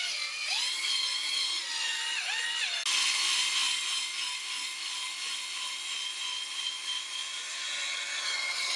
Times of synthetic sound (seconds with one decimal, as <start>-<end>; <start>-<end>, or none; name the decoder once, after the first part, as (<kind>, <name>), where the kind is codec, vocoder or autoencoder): none